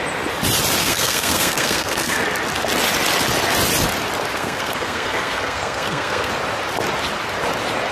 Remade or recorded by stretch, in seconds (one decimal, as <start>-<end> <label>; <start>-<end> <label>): 0.0-0.8 recorded; 0.8-2.2 remade; 2.2-4.3 recorded; 4.3-6.3 remade; 6.3-7.9 recorded